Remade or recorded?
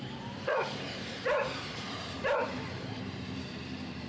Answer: remade